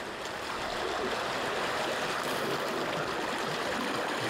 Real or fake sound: real